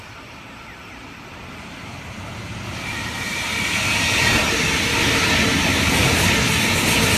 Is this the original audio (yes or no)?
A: yes